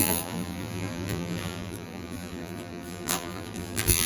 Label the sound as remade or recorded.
remade